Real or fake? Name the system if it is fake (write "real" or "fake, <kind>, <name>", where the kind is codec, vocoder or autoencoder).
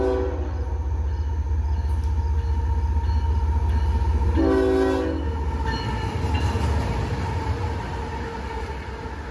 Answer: real